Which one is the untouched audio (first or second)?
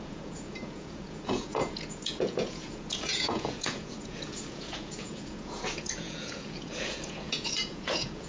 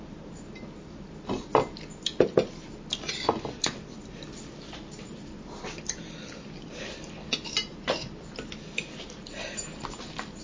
second